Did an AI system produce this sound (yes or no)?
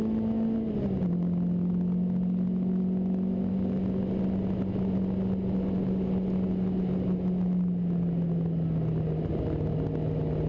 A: no